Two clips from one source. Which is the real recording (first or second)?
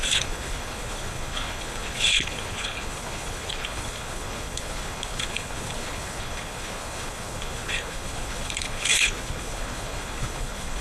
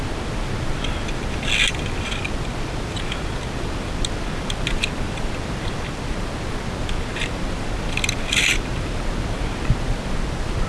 second